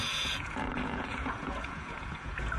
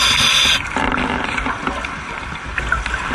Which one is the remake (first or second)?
first